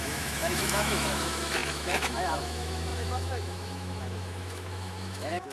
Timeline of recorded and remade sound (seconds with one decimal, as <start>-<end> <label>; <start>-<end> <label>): 0.0-5.5 remade